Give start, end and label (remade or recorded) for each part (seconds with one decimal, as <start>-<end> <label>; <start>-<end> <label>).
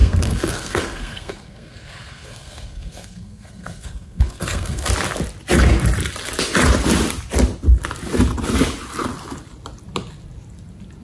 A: 0.0-4.9 remade; 4.9-11.0 recorded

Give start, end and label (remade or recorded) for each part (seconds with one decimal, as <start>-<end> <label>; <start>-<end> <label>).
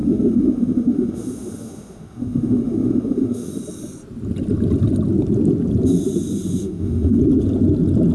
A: 0.0-3.5 remade; 3.5-6.6 recorded; 6.6-7.2 remade; 7.2-8.1 recorded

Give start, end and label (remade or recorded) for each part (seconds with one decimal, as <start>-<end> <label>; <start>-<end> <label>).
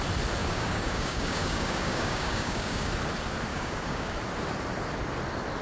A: 0.0-0.4 recorded; 0.4-2.9 remade; 2.9-3.5 recorded; 3.5-4.1 remade; 4.1-5.6 recorded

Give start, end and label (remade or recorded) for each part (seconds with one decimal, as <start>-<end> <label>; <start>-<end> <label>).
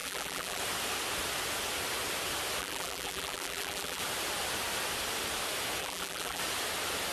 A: 0.0-0.6 remade; 0.6-2.6 recorded; 2.6-4.0 remade; 4.0-5.8 recorded; 5.8-6.4 remade; 6.4-7.1 recorded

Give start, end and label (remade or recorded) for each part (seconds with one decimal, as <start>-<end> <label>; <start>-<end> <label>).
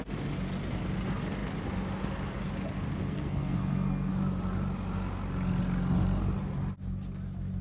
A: 0.0-3.0 recorded; 3.0-4.1 remade; 4.1-7.6 recorded